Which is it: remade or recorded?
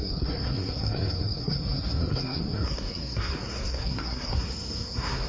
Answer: remade